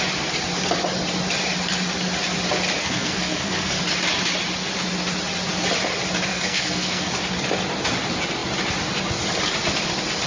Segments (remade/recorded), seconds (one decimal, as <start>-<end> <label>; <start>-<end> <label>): 0.0-2.8 recorded; 2.8-3.8 remade; 3.8-6.3 recorded; 6.3-7.1 remade; 7.1-10.3 recorded